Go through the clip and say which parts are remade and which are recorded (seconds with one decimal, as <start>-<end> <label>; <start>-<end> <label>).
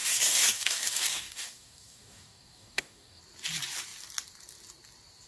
0.0-3.2 remade; 3.2-5.3 recorded